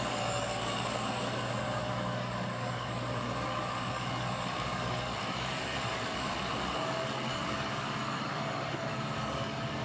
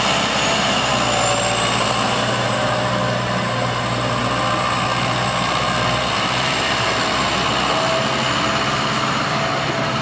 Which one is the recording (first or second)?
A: second